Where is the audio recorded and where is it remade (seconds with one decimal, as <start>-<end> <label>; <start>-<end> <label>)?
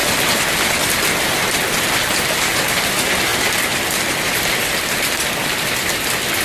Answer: 0.0-6.4 recorded